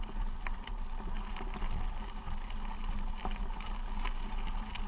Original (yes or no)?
yes